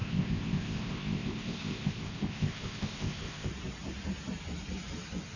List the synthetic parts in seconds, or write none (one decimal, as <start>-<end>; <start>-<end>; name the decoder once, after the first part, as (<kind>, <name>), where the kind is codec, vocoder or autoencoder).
0.0-3.5 (codec, ZipCodec)